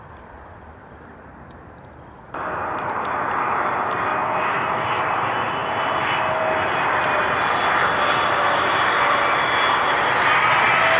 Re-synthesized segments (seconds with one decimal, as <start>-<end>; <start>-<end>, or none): 5.6-9.9